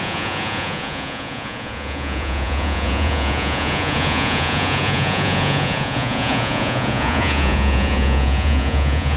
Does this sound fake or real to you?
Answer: fake